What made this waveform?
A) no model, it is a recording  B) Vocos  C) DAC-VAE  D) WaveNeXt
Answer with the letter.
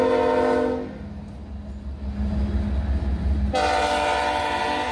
A